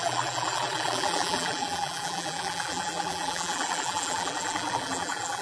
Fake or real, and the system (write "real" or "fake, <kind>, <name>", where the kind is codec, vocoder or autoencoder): fake, vocoder, BigVGAN v2